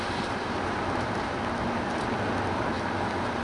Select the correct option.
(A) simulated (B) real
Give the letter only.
B